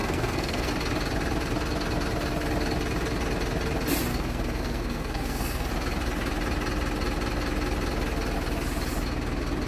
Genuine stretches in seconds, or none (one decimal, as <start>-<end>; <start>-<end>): 0.7-4.1; 5.7-9.7